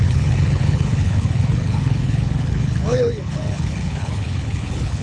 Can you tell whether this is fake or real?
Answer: fake